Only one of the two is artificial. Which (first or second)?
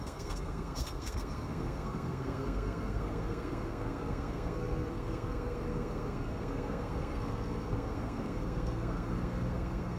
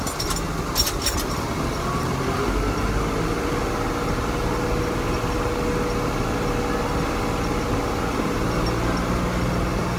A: first